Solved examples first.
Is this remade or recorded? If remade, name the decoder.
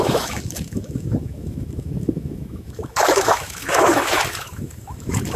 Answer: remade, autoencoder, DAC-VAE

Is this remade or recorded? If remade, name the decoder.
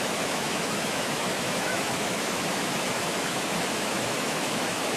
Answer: remade, autoencoder, DAC-VAE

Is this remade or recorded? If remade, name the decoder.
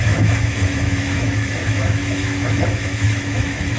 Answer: remade, autoencoder, DAC-VAE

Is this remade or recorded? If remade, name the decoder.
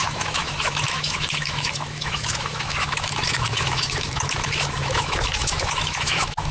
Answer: remade, autoencoder, DAC-VAE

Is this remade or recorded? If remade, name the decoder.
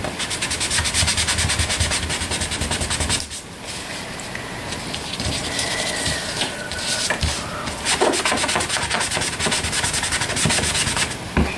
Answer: recorded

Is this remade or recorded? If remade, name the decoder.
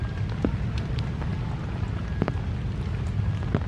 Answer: recorded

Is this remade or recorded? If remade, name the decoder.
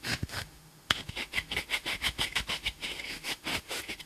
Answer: remade, autoencoder, DAC-VAE